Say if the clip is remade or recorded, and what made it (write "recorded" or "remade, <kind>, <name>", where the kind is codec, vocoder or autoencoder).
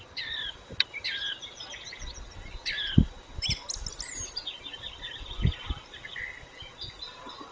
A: recorded